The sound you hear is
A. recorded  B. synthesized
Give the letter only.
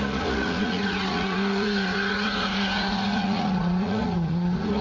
B